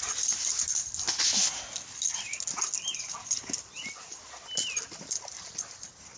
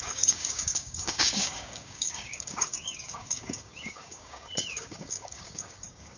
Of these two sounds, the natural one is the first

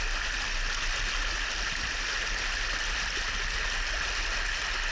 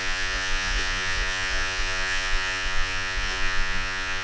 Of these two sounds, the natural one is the first